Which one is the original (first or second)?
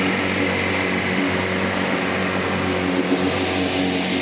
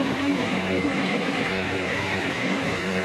first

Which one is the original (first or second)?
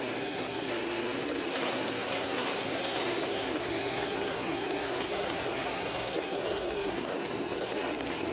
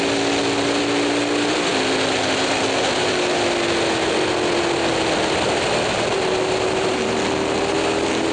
second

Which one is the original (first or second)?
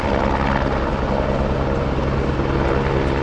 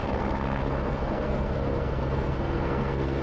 first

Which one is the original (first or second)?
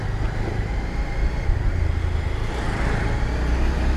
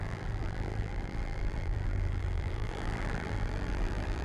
first